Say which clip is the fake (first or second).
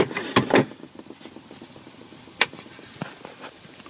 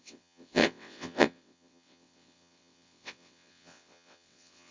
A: second